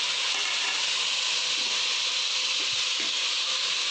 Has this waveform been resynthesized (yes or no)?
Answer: no